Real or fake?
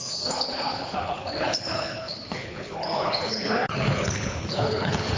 fake